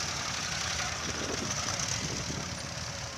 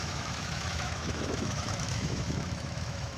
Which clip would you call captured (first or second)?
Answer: first